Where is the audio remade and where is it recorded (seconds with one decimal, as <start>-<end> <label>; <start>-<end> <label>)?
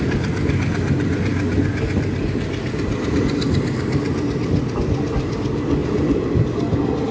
0.0-5.8 recorded; 5.8-6.4 remade; 6.4-7.1 recorded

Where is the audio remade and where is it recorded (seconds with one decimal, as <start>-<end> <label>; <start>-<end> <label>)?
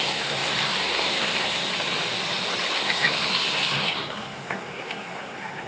0.0-1.7 remade; 1.7-2.7 recorded; 2.7-5.7 remade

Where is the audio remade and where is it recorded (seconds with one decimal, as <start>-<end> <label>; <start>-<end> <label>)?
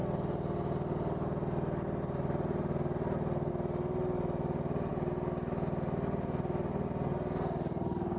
0.0-8.2 recorded